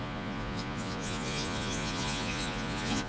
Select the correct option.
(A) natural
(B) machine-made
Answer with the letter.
B